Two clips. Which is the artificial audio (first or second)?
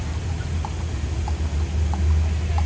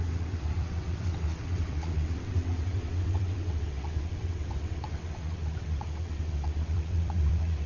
second